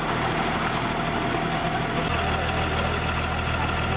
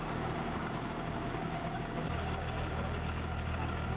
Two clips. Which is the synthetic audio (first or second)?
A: second